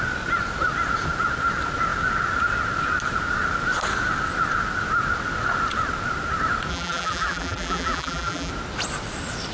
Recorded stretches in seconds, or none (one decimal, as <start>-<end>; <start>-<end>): 0.0-6.7; 8.5-9.5